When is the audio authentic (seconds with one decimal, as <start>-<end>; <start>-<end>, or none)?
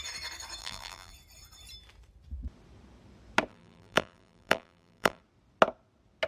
0.0-0.6; 1.1-3.5; 5.2-6.3